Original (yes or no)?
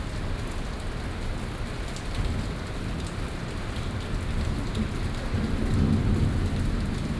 yes